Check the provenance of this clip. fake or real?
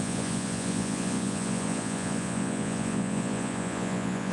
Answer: fake